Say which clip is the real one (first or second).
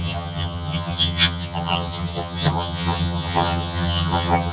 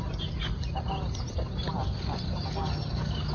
second